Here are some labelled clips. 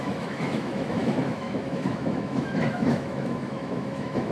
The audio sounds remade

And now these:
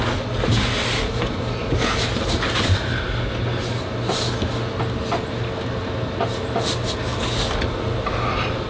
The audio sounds recorded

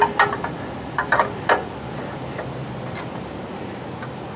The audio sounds recorded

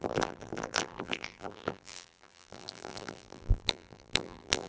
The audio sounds remade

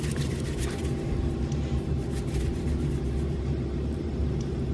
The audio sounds remade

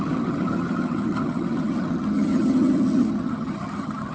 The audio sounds remade